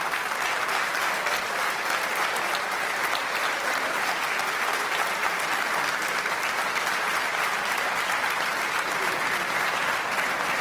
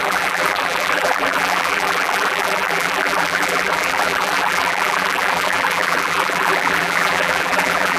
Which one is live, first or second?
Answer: first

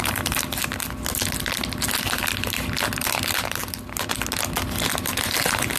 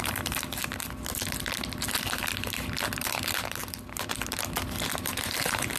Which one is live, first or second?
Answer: first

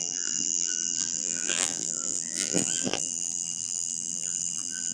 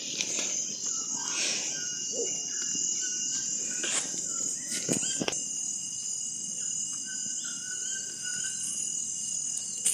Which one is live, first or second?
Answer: second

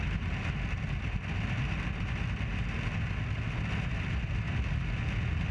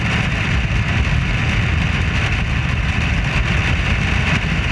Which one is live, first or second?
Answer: first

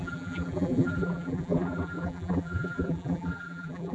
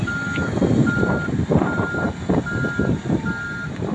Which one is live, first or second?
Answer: second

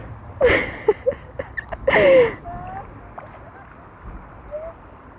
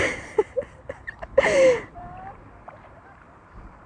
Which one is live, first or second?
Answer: first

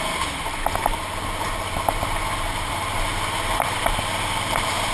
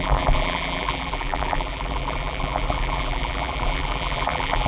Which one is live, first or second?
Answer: first